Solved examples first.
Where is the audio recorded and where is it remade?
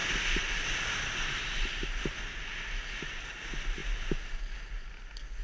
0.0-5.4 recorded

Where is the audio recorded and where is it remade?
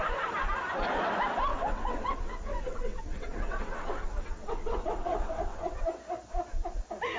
0.0-1.5 recorded; 1.5-5.8 remade; 5.8-7.2 recorded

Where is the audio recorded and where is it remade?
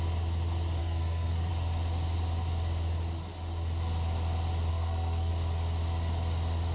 0.0-0.8 recorded; 0.8-1.5 remade; 1.5-4.7 recorded; 4.7-5.3 remade; 5.3-6.7 recorded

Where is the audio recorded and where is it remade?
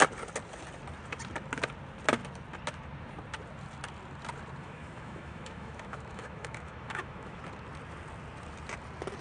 0.0-4.6 recorded; 4.6-7.4 remade; 7.4-9.2 recorded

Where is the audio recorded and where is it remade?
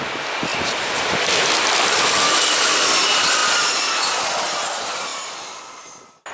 0.0-0.5 recorded; 0.5-1.3 remade; 1.3-6.3 recorded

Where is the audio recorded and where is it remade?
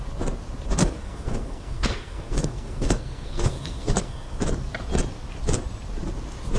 0.0-0.8 recorded; 0.8-4.4 remade; 4.4-6.6 recorded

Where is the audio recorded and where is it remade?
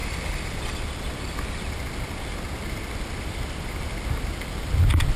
0.0-5.2 recorded